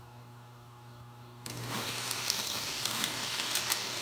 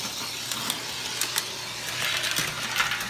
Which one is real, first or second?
second